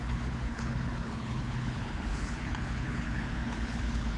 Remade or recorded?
remade